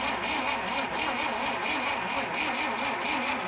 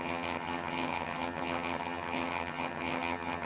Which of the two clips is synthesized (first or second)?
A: second